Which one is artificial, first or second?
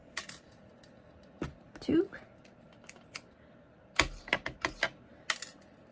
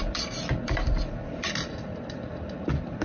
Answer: second